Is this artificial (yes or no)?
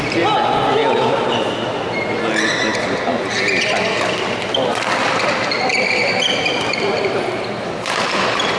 no